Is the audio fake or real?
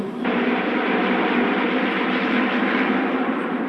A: fake